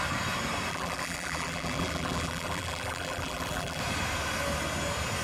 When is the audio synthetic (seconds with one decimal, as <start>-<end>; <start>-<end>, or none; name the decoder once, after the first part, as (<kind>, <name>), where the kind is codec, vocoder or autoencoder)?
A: 0.7-3.8 (vocoder, BigVGAN v2)